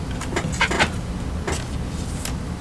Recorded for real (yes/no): yes